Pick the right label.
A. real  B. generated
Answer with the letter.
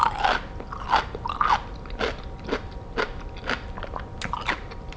A